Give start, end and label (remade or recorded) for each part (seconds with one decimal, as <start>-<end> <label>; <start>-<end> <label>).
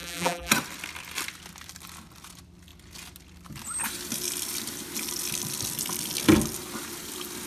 0.0-0.5 remade; 0.5-7.5 recorded